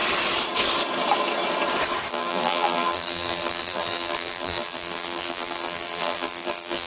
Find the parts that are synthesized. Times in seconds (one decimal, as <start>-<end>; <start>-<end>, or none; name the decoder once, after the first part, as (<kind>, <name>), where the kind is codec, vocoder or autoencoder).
2.1-6.9 (vocoder, BigVGAN v2)